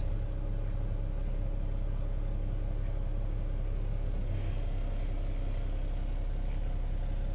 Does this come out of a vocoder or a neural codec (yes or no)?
no